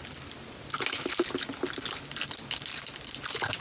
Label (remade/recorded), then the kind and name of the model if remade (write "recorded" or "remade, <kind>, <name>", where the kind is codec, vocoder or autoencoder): recorded